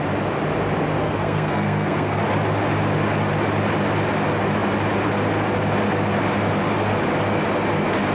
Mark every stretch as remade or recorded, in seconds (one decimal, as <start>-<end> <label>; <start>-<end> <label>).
0.0-1.0 recorded; 1.0-2.2 remade; 2.2-8.1 recorded